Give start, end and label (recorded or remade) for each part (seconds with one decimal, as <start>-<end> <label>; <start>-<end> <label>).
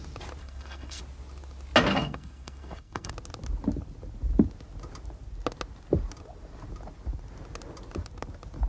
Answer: 0.0-0.4 recorded; 0.4-1.0 remade; 1.0-1.9 recorded; 1.9-3.1 remade; 3.1-8.7 recorded